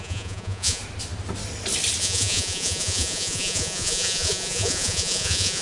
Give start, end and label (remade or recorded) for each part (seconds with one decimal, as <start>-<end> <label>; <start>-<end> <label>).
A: 0.0-0.8 remade; 0.8-2.0 recorded; 2.0-5.6 remade